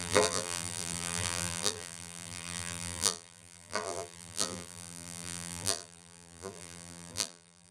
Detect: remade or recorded remade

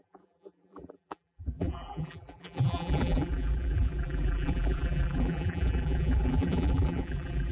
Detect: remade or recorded remade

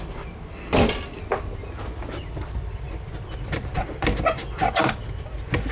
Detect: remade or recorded recorded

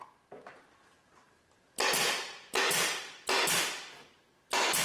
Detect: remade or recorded recorded